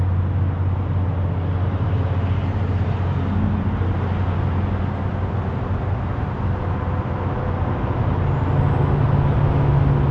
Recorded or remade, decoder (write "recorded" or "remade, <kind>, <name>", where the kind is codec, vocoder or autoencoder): recorded